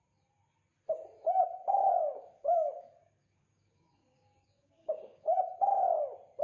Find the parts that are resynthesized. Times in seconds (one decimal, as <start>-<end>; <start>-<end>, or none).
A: 1.6-5.4